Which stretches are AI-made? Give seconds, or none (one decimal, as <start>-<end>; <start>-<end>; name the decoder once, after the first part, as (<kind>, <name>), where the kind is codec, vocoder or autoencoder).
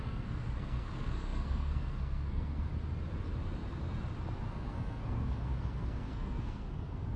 0.0-2.7 (codec, SNAC); 4.5-7.2